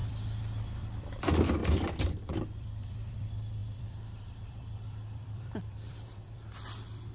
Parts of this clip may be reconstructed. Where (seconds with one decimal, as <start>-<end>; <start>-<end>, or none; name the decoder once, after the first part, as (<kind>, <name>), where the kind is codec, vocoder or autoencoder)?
0.0-7.1 (vocoder, BigVGAN v2)